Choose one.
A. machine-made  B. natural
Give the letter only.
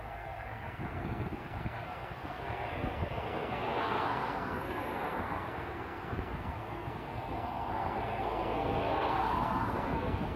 A